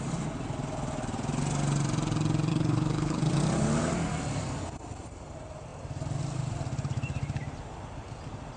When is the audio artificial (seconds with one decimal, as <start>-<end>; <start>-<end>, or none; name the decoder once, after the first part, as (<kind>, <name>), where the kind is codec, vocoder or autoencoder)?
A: 2.5-3.2 (codec, HILCodec)